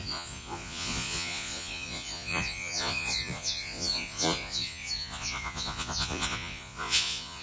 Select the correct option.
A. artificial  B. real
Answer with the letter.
A